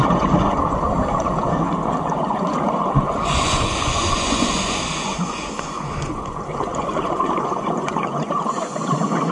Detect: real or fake fake